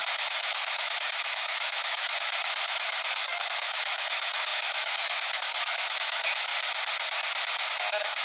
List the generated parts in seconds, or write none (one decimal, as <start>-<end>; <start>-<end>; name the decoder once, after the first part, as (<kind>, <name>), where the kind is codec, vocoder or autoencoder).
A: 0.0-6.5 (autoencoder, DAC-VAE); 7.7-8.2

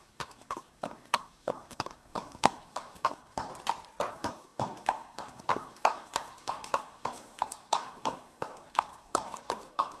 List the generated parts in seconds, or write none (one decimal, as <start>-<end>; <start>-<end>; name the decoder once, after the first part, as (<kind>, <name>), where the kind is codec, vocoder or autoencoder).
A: 0.0-3.5 (codec, SNAC); 4.1-10.0

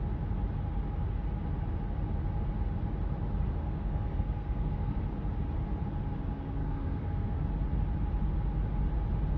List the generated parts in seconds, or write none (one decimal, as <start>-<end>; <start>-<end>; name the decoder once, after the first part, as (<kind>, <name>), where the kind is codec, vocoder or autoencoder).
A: 3.6-5.0 (codec, SNAC); 6.6-7.4

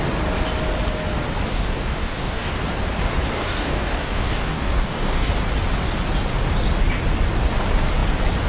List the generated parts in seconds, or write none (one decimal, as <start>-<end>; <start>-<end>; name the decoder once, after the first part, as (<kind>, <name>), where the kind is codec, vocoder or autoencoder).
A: 1.5-2.5 (codec, DAC); 3.4-5.3

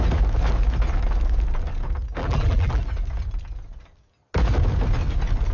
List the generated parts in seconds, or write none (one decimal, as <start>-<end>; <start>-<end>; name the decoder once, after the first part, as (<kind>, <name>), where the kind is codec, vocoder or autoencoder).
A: 2.2-2.8 (vocoder, BigVGAN v2)

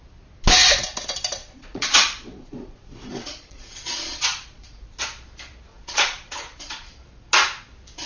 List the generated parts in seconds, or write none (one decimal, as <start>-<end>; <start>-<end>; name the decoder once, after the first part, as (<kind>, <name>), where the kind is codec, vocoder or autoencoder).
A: 1.4-5.0 (vocoder, Vocos); 5.7-6.9